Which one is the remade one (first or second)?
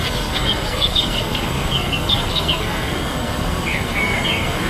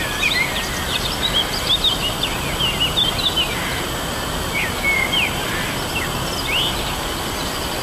first